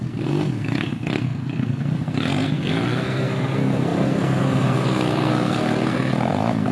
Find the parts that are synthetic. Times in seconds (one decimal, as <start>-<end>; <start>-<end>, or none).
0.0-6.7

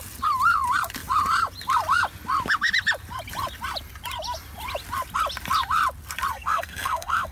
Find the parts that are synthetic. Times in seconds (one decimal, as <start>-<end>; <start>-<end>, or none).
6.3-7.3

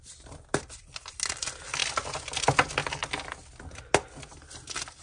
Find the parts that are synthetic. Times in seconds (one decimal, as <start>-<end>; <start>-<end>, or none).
0.0-1.8; 2.4-3.0